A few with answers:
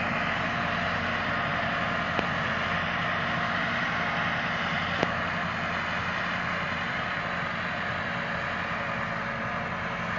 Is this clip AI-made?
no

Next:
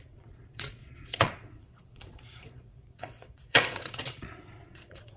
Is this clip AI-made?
yes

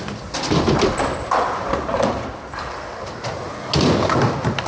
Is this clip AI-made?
no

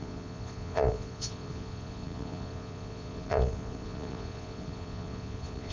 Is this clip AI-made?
yes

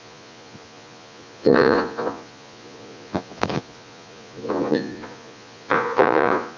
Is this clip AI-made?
yes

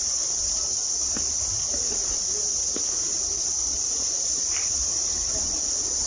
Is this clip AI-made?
no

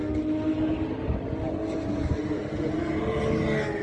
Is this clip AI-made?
no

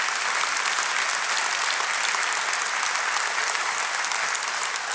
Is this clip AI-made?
no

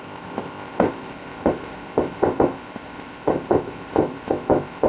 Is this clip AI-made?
yes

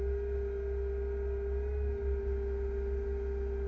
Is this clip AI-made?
no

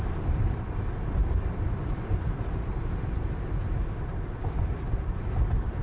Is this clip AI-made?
yes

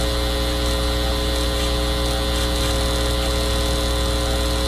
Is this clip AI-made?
no